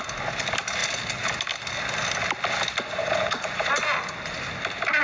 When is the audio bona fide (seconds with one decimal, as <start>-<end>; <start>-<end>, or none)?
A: 0.0-3.0; 3.7-5.0